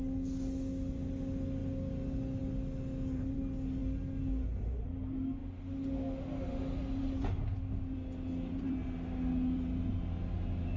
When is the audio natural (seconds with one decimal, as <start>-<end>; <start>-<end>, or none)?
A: 0.0-10.8